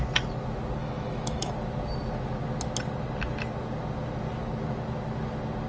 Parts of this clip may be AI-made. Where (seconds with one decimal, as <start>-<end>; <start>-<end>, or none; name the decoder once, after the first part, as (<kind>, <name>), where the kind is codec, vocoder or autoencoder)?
0.8-1.5 (autoencoder, DAC-VAE)